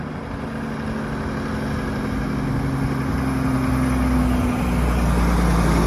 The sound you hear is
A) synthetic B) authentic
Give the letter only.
B